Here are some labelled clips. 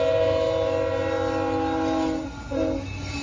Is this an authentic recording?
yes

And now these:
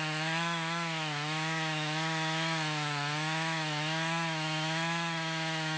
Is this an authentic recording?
no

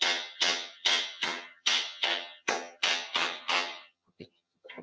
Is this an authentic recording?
no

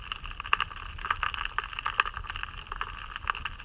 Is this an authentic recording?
yes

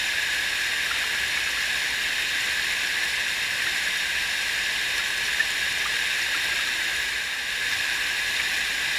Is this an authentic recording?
yes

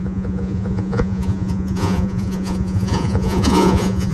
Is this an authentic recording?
no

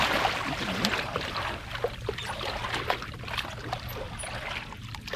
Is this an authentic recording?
yes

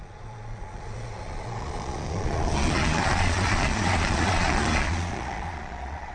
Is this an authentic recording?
no